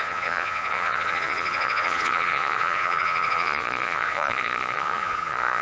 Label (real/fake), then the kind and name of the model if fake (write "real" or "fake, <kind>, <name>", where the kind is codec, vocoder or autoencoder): fake, vocoder, Vocos